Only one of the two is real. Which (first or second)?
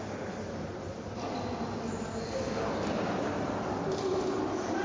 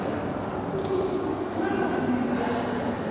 second